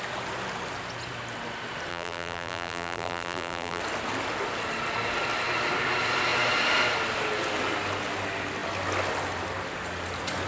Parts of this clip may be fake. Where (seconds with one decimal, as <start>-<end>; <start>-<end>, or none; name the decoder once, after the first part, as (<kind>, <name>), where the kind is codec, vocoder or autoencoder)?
1.9-3.8 (vocoder, BigVGAN v2)